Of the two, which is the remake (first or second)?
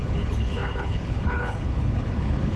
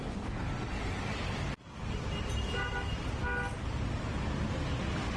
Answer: first